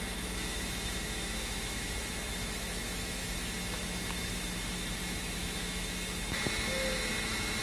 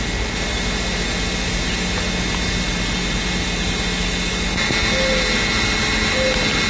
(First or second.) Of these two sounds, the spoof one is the first